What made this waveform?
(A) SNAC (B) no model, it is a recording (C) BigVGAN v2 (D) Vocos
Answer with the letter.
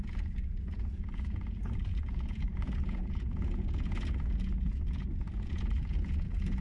D